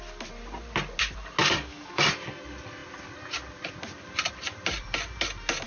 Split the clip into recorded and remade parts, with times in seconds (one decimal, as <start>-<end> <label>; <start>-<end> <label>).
0.0-1.4 recorded; 1.4-2.0 remade; 2.0-5.7 recorded